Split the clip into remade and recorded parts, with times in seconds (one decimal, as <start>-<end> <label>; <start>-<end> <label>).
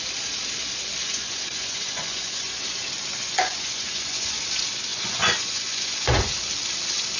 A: 0.0-1.0 recorded; 1.0-2.8 remade; 2.8-3.2 recorded; 3.2-4.4 remade; 4.4-4.9 recorded; 4.9-6.3 remade; 6.3-7.2 recorded